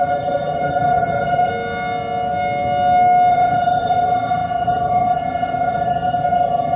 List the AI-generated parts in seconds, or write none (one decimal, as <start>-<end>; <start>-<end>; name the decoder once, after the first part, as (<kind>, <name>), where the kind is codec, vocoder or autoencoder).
0.0-1.5 (vocoder, HiFi-GAN); 3.3-6.8